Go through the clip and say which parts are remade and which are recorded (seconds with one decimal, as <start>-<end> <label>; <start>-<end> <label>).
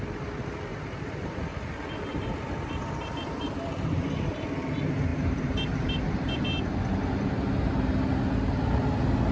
0.0-0.7 recorded; 0.7-1.4 remade; 1.4-2.1 recorded; 2.1-4.0 remade; 4.0-5.1 recorded; 5.1-7.7 remade; 7.7-9.3 recorded